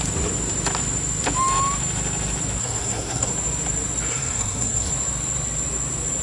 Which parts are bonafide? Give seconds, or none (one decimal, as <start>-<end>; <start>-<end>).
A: 0.0-2.6; 3.3-4.1; 4.9-6.2